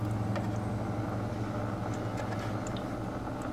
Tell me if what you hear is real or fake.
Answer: real